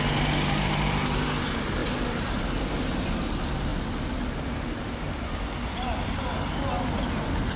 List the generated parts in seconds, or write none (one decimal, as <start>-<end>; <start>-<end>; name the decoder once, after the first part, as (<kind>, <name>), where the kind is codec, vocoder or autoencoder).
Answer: none